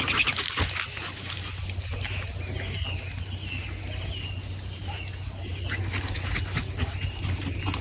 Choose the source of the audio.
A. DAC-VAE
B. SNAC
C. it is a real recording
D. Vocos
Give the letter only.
C